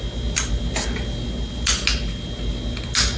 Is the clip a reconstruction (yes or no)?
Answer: no